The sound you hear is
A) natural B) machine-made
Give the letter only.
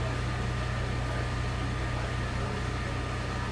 A